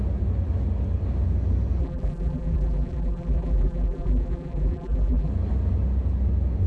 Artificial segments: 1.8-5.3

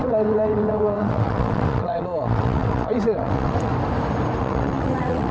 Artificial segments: 0.0-3.7; 4.4-5.3

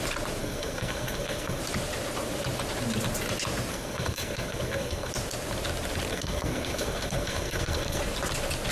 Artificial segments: 0.4-1.6; 3.7-5.1; 6.1-8.0

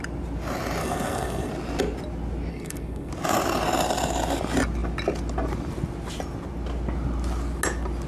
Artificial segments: 0.8-1.5; 2.5-3.1

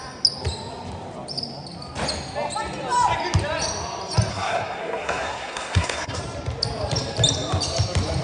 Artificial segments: 4.3-6.2

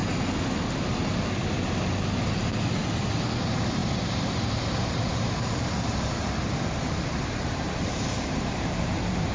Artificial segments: 3.4-5.9; 6.8-9.3